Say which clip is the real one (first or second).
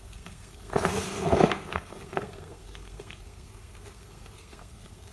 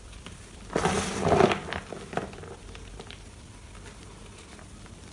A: second